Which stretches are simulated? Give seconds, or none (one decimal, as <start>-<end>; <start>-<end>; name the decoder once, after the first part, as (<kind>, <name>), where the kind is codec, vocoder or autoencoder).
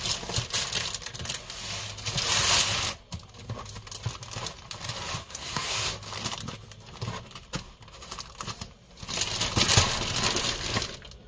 5.2-5.9 (codec, SNAC)